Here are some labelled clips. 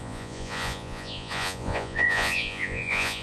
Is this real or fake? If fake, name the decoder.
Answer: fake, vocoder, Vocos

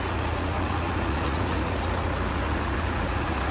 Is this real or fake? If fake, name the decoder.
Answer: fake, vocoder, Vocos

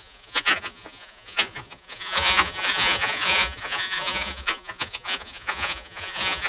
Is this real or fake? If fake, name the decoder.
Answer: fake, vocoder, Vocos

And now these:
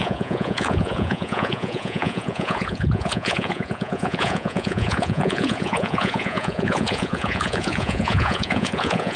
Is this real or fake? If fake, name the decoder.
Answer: fake, vocoder, Vocos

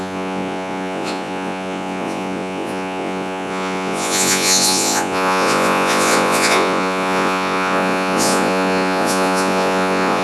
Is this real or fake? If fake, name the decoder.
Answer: fake, vocoder, Vocos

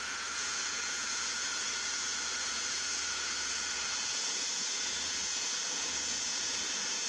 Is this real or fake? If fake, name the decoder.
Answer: fake, vocoder, Vocos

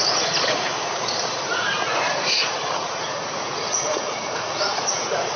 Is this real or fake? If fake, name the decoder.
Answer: fake, vocoder, Vocos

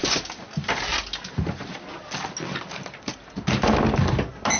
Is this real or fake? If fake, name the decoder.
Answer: real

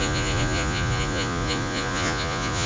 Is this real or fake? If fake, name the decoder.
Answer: fake, vocoder, Vocos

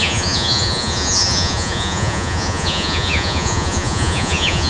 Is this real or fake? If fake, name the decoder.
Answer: fake, vocoder, Vocos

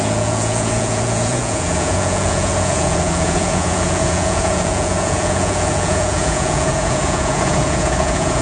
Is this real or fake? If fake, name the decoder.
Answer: fake, vocoder, Vocos